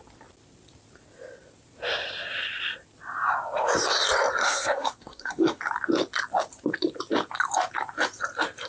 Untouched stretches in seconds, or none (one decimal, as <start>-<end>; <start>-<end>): 0.0-4.4; 5.6-8.7